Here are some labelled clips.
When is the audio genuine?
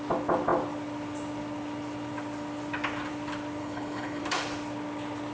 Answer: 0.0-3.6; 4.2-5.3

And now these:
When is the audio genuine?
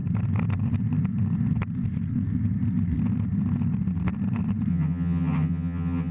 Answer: 0.0-4.7